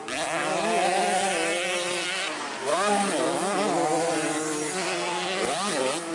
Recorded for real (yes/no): yes